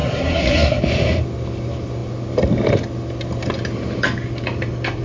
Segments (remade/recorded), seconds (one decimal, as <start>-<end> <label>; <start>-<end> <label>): 0.0-0.8 remade; 0.8-5.0 recorded